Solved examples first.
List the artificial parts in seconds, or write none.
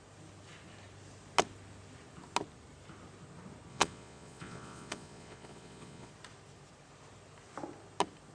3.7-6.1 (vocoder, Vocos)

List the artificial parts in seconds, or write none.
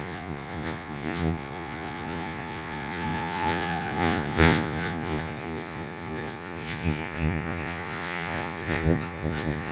0.0-9.7 (vocoder, Vocos)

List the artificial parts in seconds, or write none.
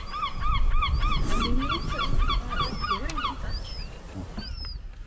0.0-0.6 (vocoder, BigVGAN v2); 3.7-5.1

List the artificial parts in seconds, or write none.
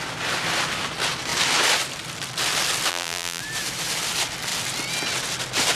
2.9-3.4 (vocoder, BigVGAN v2)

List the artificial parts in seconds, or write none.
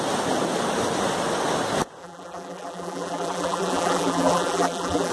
2.0-5.1 (vocoder, BigVGAN v2)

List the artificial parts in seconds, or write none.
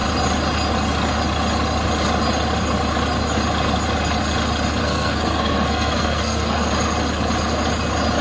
4.8-6.7 (codec, SNAC)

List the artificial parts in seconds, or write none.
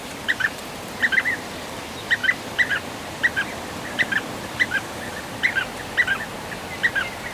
0.0-0.7 (vocoder, BigVGAN v2)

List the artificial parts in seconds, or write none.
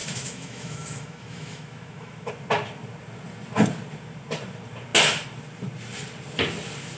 0.0-2.3 (autoencoder, DAC-VAE)